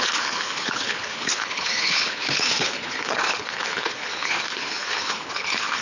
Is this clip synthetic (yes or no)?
yes